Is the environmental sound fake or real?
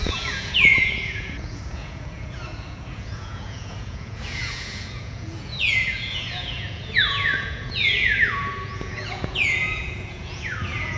fake